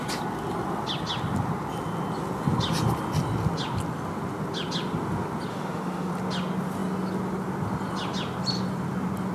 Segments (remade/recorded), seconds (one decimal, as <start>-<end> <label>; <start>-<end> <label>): 0.0-5.5 recorded; 5.5-6.1 remade; 6.1-9.3 recorded